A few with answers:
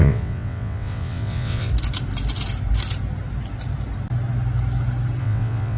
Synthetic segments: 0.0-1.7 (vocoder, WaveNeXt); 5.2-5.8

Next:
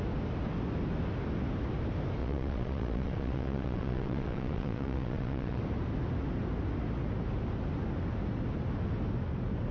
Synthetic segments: 2.2-5.6 (vocoder, WaveNeXt)